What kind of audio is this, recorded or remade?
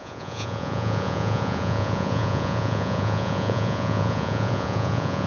remade